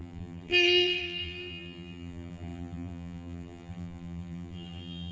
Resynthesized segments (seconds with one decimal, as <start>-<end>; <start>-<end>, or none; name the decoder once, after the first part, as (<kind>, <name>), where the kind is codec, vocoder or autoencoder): 0.0-5.1 (vocoder, BigVGAN v2)